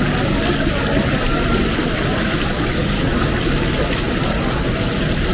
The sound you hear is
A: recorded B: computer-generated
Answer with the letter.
A